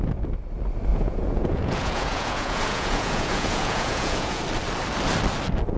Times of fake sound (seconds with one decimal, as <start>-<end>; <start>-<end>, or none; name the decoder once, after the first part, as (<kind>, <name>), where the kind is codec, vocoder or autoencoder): 0.9-4.4 (vocoder, Vocos)